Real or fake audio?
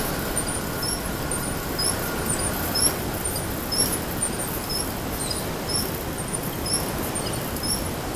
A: real